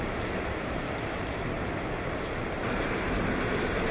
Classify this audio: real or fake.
fake